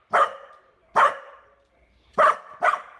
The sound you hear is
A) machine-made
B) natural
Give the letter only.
B